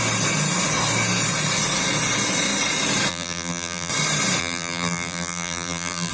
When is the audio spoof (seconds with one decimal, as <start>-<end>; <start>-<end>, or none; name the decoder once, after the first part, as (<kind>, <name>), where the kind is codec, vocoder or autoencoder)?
3.1-3.9 (vocoder, BigVGAN v2); 4.4-6.1